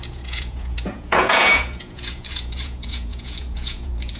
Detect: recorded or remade remade